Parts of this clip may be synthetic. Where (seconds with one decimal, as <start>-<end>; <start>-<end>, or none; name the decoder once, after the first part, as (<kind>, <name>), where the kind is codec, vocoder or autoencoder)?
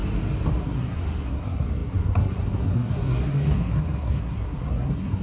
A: 0.6-5.2 (codec, SNAC)